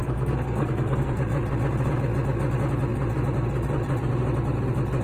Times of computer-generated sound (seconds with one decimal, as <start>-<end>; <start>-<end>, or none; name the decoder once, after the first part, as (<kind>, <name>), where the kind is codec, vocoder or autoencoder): 0.0-1.2 (codec, SNAC)